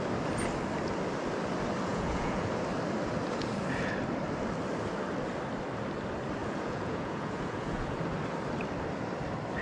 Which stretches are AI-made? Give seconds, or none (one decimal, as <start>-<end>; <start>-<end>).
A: 1.9-2.5; 6.4-7.9